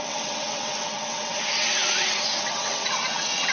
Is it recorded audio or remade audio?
remade